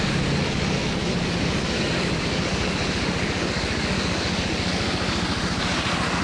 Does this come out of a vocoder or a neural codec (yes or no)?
yes